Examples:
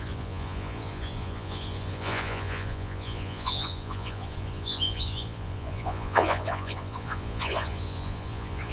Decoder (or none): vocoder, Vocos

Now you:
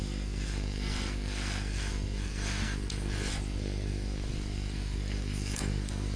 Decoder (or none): codec, SNAC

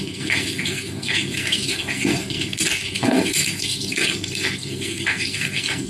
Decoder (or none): codec, SNAC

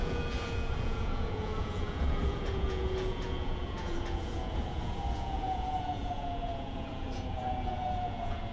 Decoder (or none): vocoder, Vocos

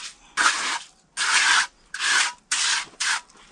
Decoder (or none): none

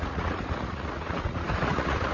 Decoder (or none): vocoder, Vocos